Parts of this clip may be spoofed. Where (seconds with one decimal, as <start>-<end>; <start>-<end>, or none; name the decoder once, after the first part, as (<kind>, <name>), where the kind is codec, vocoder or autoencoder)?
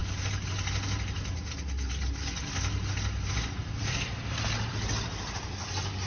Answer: 3.7-6.1 (vocoder, BigVGAN v2)